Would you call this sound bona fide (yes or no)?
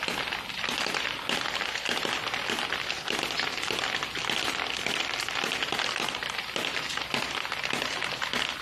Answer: yes